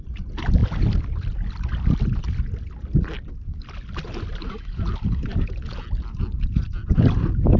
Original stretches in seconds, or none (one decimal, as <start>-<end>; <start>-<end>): 0.0-7.6